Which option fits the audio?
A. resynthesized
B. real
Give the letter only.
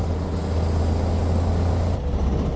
B